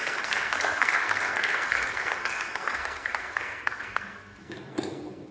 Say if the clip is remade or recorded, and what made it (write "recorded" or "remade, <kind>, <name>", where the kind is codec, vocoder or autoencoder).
remade, codec, SNAC